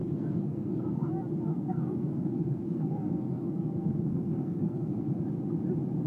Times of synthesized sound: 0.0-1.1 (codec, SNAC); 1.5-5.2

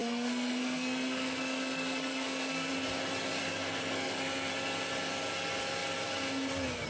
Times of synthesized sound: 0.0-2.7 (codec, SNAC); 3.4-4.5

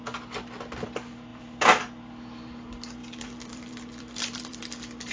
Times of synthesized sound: 1.3-1.8 (vocoder, BigVGAN v2); 3.0-4.6

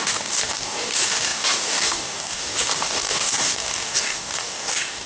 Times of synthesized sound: 0.0-5.1 (codec, DAC)

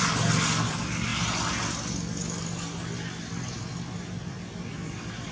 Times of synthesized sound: none

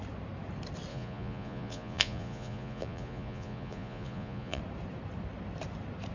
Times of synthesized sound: 0.9-4.6 (vocoder, Vocos)

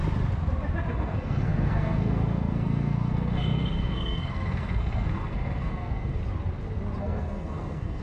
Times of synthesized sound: 0.9-6.2 (codec, SNAC); 7.0-8.0